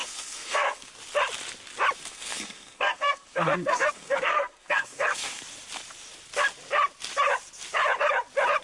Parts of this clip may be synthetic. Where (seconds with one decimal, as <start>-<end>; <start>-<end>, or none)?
0.0-0.9; 2.1-5.4